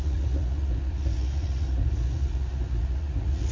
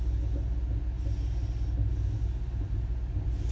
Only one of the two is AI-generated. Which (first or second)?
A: first